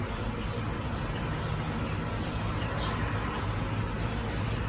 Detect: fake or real real